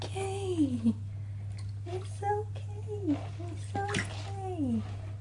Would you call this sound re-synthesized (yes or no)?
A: no